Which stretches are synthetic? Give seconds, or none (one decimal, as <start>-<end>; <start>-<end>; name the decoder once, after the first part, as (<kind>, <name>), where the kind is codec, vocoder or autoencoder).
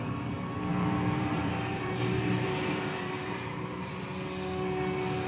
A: 0.7-3.9 (vocoder, BigVGAN v2)